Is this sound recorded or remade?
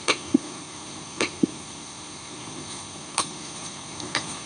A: remade